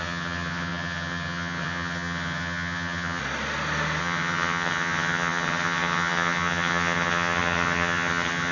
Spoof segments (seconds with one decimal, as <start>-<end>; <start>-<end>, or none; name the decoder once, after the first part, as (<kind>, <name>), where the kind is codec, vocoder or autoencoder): 0.0-3.2 (vocoder, HiFi-GAN); 4.0-8.5